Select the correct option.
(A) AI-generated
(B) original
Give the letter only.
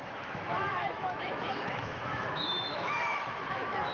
A